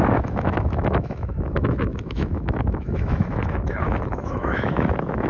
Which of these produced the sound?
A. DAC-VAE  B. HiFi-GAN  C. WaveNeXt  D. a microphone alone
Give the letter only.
A